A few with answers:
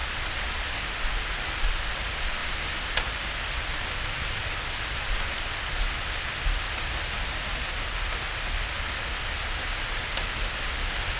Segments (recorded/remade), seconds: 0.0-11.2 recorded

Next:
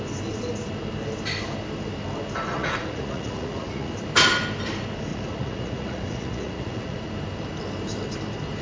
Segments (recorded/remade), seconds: 0.0-2.5 recorded; 2.5-3.9 remade; 3.9-5.1 recorded; 5.1-7.1 remade; 7.1-8.6 recorded